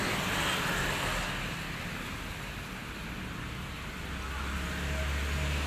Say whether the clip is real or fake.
real